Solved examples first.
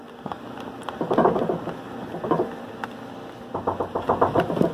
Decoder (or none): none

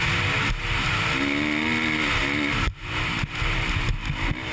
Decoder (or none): none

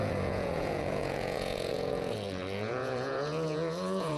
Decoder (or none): vocoder, Vocos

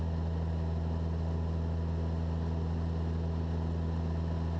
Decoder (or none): none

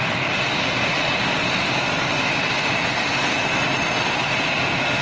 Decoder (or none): none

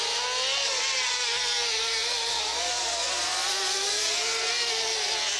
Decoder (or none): none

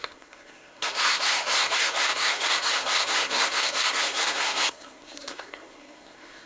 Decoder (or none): codec, SNAC